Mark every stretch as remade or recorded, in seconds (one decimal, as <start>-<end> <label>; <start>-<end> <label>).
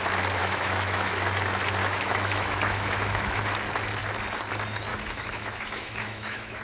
0.0-0.4 recorded; 0.4-1.1 remade; 1.1-1.8 recorded; 1.8-3.4 remade; 3.4-4.9 recorded; 4.9-6.6 remade